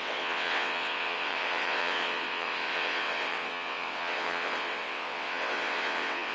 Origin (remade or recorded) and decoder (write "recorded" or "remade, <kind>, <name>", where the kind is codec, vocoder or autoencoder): remade, vocoder, WaveNeXt